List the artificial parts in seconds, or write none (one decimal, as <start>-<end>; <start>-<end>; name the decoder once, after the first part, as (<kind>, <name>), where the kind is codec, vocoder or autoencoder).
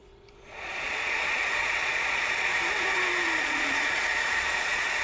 0.0-2.5 (vocoder, Vocos); 3.4-5.0